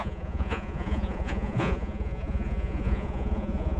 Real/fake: fake